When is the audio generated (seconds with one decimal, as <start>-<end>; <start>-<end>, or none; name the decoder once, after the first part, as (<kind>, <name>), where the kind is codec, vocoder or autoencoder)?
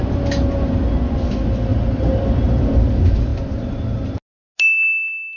1.7-2.6 (vocoder, BigVGAN v2)